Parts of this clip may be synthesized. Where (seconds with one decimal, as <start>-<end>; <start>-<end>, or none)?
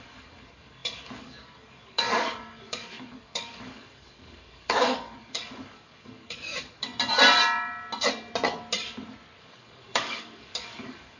0.0-6.9; 9.4-11.2